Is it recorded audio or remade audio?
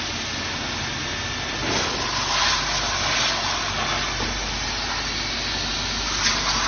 recorded